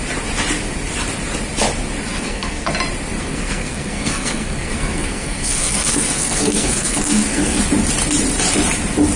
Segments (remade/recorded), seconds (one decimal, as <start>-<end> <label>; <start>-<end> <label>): 0.0-2.1 recorded; 2.1-2.7 remade; 2.7-3.2 recorded; 3.2-7.6 remade; 7.6-9.2 recorded